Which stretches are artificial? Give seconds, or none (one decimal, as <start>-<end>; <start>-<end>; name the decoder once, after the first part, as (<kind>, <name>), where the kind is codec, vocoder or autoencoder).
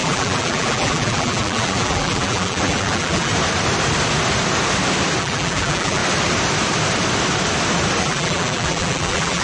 0.0-3.3 (vocoder, BigVGAN v2); 5.2-6.0; 8.0-9.4